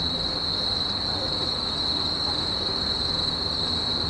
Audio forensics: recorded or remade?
recorded